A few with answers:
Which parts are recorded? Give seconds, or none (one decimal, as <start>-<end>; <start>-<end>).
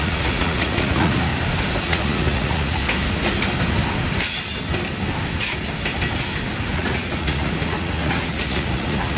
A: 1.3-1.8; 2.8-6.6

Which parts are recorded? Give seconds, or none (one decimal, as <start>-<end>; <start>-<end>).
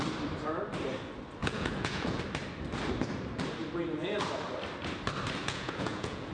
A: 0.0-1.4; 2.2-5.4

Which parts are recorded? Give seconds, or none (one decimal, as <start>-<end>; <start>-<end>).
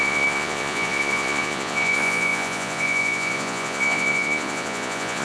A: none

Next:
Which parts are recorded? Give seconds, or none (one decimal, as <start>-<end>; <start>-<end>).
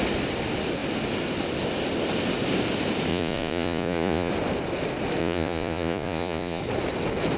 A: 0.0-3.1; 4.3-5.2; 6.6-7.4